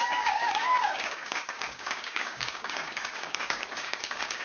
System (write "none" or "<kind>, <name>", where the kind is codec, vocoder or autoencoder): codec, DAC